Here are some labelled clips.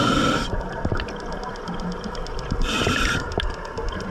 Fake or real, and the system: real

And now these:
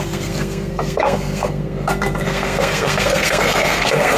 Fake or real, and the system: fake, codec, SNAC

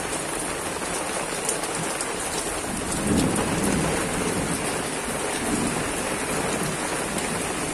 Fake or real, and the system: real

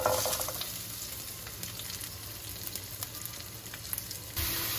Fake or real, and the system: real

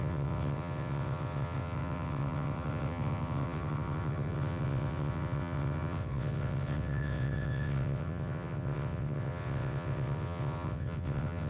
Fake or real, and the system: fake, vocoder, WaveNeXt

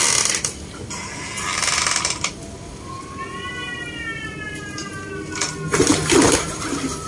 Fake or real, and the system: real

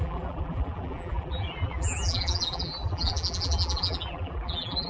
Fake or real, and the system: fake, vocoder, BigVGAN v2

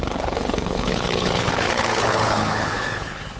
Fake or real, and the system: fake, codec, HILCodec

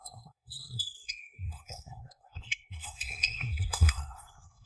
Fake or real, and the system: fake, codec, SNAC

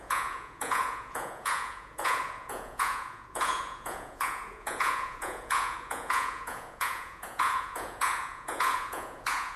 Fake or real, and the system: fake, vocoder, Vocos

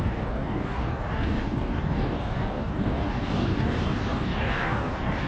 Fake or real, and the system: fake, codec, DAC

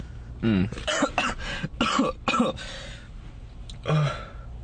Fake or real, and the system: real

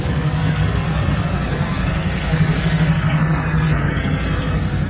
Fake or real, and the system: fake, codec, SNAC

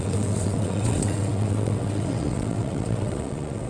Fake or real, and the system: fake, vocoder, WaveNeXt